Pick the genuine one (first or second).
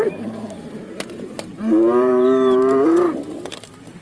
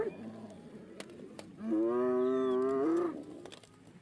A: second